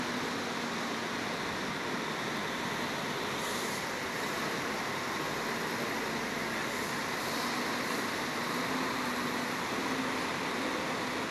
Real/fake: real